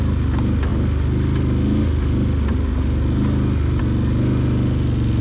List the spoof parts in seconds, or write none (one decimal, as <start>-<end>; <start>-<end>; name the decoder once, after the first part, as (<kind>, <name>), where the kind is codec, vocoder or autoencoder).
none